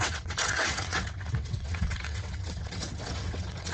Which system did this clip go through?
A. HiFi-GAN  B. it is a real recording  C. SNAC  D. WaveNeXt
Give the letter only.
D